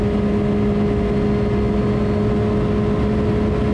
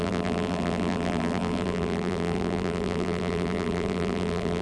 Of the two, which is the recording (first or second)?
first